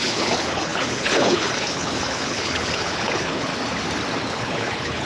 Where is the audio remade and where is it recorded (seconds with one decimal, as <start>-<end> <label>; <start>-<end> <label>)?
0.0-3.5 remade; 3.5-4.3 recorded; 4.3-5.1 remade